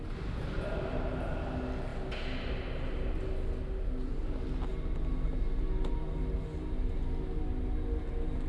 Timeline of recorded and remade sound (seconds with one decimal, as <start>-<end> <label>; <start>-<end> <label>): 0.0-8.5 recorded